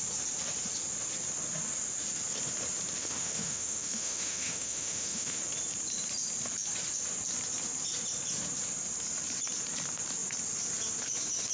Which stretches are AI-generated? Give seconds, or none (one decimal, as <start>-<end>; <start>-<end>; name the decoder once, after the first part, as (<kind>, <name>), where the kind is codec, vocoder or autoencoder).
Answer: 3.0-5.4 (autoencoder, DAC-VAE)